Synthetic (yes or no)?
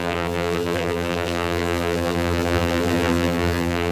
yes